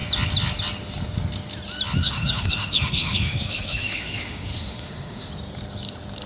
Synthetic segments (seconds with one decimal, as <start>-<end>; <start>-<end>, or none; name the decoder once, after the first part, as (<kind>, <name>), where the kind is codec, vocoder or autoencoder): 2.0-5.3 (autoencoder, DAC-VAE)